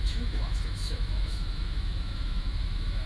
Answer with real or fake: fake